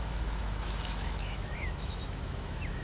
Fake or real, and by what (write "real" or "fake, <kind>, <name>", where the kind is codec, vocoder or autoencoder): fake, autoencoder, DAC-VAE